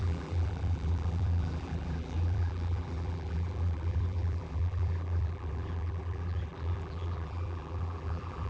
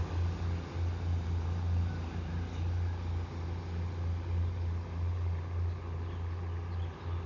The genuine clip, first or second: second